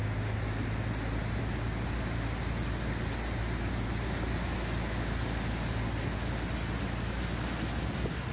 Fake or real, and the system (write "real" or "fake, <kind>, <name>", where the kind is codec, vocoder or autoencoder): real